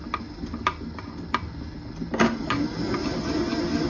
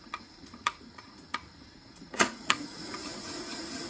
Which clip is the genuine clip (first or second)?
first